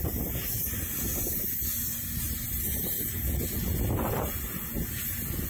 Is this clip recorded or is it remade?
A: recorded